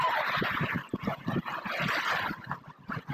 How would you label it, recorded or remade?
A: recorded